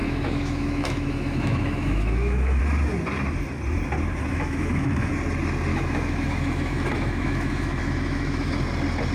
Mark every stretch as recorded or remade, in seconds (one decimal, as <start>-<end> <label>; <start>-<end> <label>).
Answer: 0.0-2.6 remade; 2.6-4.3 recorded; 4.3-5.1 remade; 5.1-5.7 recorded; 5.7-8.5 remade; 8.5-9.1 recorded

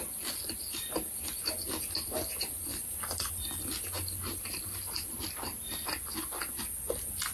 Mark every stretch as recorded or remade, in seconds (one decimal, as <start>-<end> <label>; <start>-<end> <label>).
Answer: 0.0-7.3 recorded

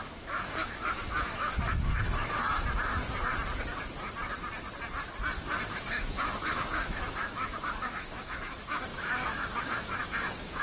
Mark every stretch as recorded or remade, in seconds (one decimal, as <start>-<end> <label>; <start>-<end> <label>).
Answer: 0.0-2.4 remade; 2.4-5.7 recorded; 5.7-10.6 remade

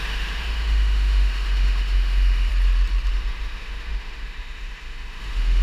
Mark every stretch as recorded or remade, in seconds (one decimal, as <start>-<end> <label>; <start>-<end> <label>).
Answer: 0.0-2.5 remade; 2.5-3.1 recorded; 3.1-5.6 remade